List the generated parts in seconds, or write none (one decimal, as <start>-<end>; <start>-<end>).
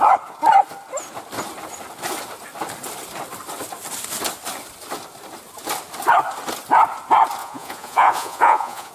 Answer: 7.4-8.9